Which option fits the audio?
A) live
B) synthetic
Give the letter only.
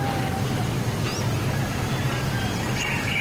A